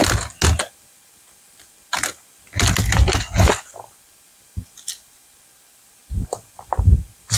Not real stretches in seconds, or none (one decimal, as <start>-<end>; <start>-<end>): none